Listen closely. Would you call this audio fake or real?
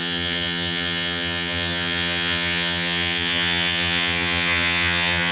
fake